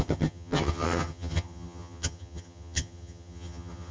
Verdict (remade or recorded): remade